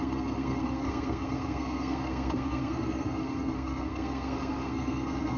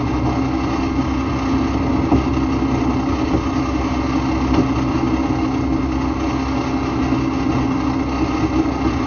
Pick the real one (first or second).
second